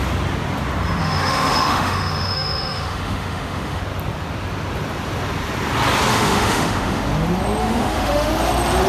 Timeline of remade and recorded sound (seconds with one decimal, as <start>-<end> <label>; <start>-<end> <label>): 0.0-1.0 recorded; 1.0-3.8 remade; 3.8-6.1 recorded; 6.1-7.0 remade; 7.0-7.6 recorded; 7.6-8.3 remade; 8.3-8.9 recorded